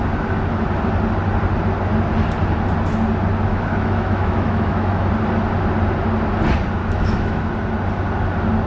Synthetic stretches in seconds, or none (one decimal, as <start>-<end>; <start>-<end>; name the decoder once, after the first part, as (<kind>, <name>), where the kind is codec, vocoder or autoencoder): 3.5-5.1 (autoencoder, DAC-VAE); 6.8-7.5